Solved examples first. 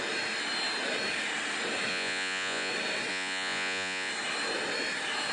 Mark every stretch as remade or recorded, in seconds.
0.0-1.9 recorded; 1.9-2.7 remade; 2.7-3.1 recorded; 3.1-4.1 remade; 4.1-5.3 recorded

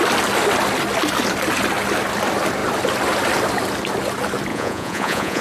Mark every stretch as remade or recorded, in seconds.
0.0-4.5 recorded; 4.5-5.4 remade

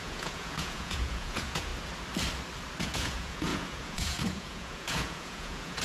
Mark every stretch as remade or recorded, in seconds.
0.0-1.7 remade; 1.7-2.8 recorded; 2.8-5.8 remade

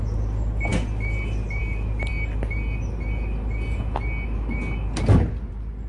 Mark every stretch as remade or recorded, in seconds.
0.0-5.9 recorded

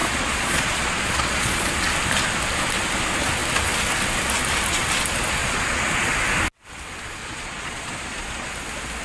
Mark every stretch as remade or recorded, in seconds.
0.0-1.7 remade; 1.7-5.4 recorded; 5.4-6.1 remade; 6.1-7.2 recorded; 7.2-8.5 remade; 8.5-9.0 recorded

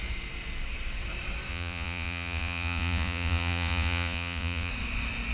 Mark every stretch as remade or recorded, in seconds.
0.0-1.5 recorded; 1.5-4.7 remade; 4.7-5.3 recorded